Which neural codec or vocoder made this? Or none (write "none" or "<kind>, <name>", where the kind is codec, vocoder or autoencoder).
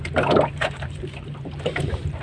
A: vocoder, BigVGAN v2